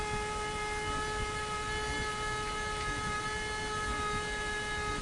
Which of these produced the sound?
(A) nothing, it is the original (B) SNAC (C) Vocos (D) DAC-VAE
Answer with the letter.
A